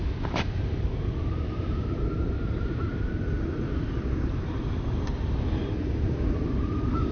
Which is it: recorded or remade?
remade